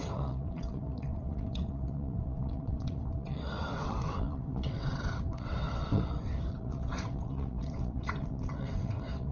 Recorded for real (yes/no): no